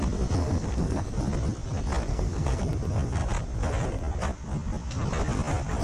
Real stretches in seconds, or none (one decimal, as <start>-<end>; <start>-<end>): 0.0-0.4; 1.1-2.1; 2.6-5.8